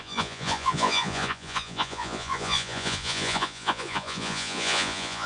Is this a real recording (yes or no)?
no